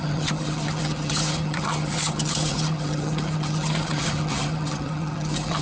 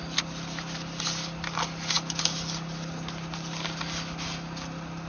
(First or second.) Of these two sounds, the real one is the second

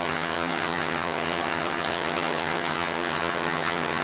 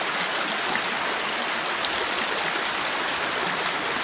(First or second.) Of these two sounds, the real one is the second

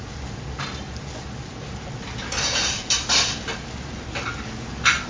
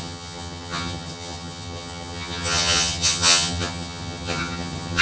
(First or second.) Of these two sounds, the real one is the first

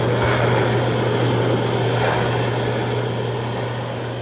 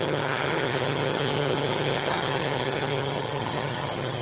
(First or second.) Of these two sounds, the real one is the first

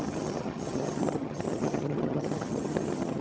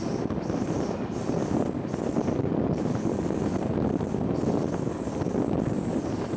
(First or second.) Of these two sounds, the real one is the second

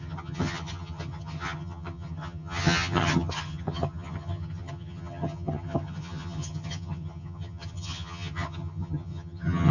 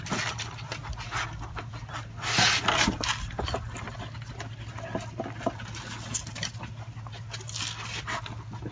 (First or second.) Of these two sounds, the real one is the second